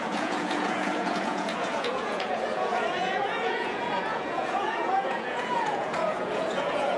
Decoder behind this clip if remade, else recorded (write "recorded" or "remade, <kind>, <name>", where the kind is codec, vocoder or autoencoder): remade, vocoder, Vocos